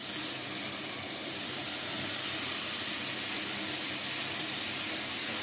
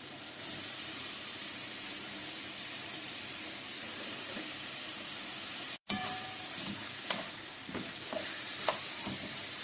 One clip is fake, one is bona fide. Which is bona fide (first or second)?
first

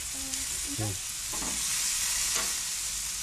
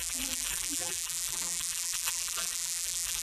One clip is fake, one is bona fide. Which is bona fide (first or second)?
first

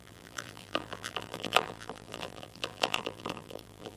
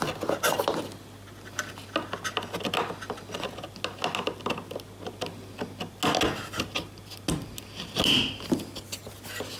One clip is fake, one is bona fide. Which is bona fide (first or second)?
second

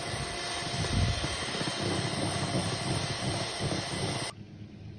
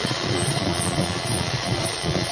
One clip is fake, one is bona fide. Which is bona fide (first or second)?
first